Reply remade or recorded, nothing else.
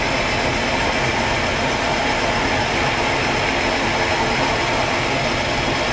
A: recorded